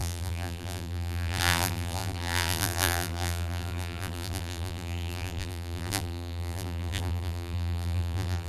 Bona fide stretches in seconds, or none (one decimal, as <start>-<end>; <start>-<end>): none